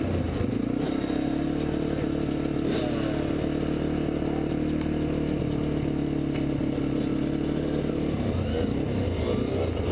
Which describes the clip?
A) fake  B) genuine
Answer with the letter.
B